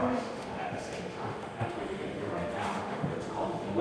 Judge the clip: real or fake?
fake